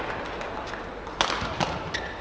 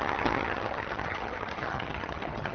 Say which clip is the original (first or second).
first